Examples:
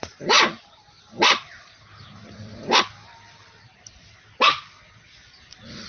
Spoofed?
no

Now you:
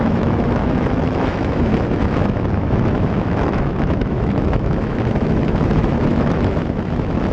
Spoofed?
yes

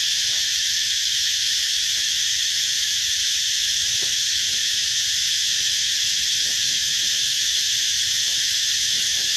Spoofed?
yes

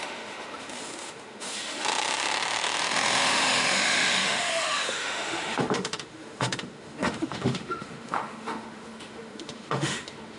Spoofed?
yes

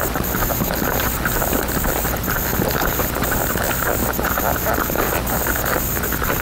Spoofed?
no